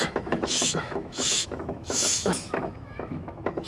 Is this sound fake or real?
fake